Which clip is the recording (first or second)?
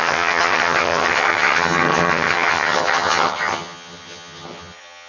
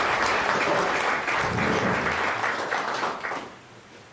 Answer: second